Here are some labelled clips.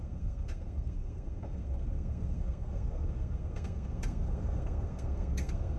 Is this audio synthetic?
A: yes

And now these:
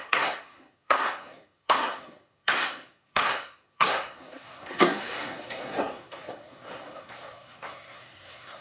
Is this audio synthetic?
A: yes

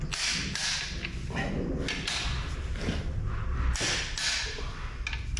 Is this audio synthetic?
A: no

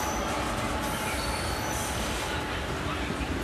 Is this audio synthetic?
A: no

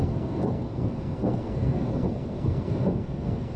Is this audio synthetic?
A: yes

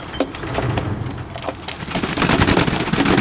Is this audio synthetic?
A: no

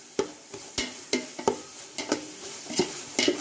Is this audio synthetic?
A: no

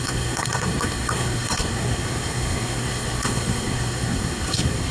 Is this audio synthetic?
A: yes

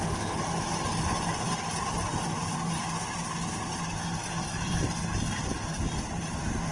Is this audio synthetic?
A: no